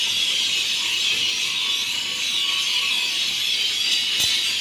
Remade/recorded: recorded